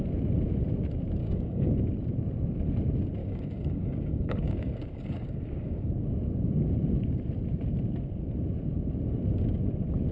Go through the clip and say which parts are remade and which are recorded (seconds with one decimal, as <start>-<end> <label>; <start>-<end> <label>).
0.0-1.2 recorded; 1.2-1.7 remade; 1.7-3.2 recorded; 3.2-5.9 remade; 5.9-10.1 recorded